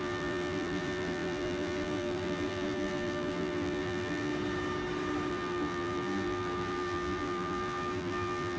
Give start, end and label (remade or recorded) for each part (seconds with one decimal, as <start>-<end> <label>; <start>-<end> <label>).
0.0-4.3 remade; 4.3-5.3 recorded; 5.3-8.6 remade